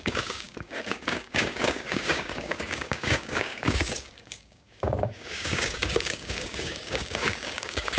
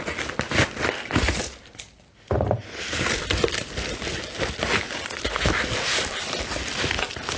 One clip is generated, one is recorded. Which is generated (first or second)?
first